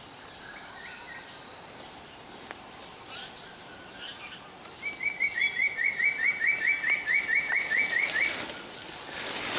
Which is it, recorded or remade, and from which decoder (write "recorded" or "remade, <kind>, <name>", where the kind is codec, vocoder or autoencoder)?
recorded